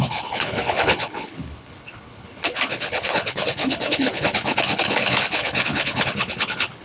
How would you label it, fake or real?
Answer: fake